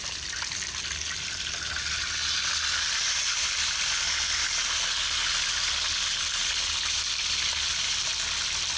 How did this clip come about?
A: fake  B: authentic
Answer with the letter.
B